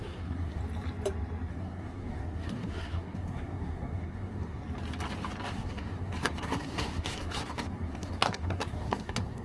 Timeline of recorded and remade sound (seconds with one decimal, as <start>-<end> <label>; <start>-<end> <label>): 0.0-0.6 remade; 0.6-1.5 recorded; 1.5-4.6 remade; 4.6-5.5 recorded; 5.5-9.4 remade